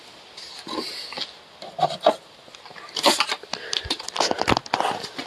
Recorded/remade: recorded